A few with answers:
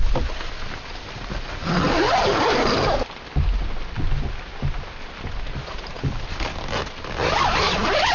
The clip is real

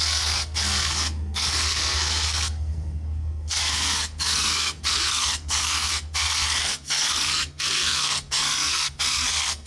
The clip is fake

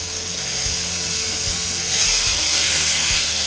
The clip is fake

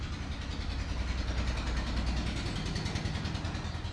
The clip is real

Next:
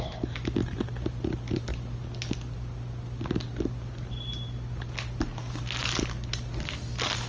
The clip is real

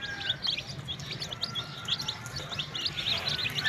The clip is real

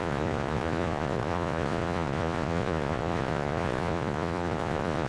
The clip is fake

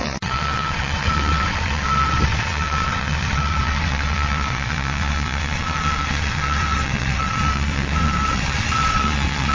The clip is fake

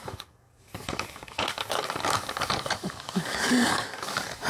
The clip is fake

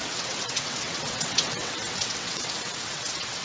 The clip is fake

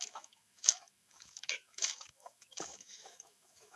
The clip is fake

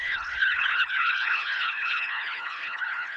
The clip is fake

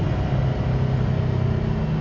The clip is real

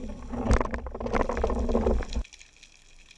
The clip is real